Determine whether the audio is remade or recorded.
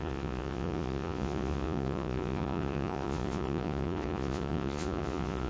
remade